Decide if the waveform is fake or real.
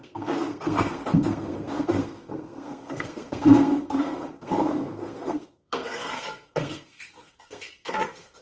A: fake